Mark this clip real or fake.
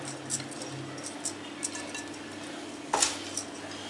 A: real